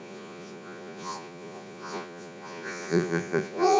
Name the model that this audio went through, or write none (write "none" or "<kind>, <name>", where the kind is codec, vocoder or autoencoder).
vocoder, Vocos